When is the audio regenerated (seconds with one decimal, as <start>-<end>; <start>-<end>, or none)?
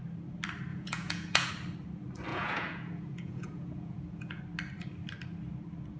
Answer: 0.7-1.5; 2.3-4.4